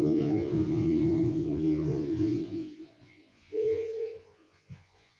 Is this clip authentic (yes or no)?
no